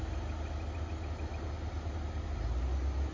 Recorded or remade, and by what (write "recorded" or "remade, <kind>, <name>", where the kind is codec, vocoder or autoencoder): recorded